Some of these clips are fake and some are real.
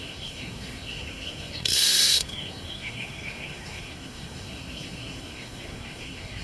fake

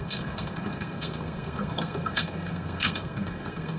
fake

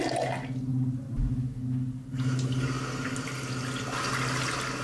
real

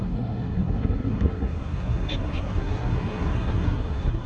fake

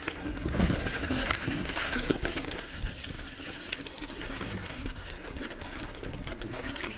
fake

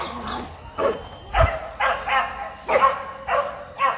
real